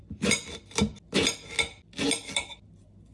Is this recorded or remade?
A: recorded